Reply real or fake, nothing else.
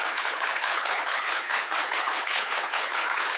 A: fake